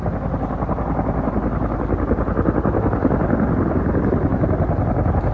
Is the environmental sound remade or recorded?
recorded